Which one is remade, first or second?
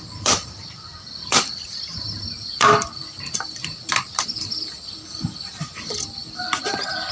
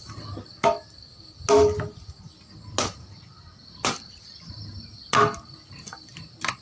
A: first